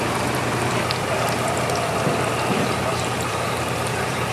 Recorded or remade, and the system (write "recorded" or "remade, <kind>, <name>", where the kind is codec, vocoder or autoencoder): remade, vocoder, BigVGAN v2